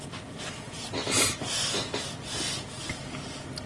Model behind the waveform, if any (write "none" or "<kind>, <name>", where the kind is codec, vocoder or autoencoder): none